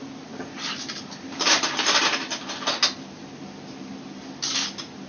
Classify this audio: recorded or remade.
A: recorded